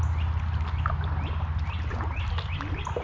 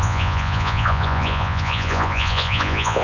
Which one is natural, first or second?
first